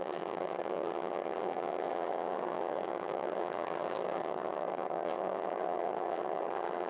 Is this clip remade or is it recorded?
remade